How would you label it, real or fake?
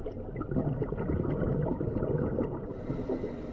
real